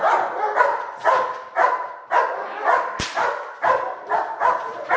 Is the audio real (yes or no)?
yes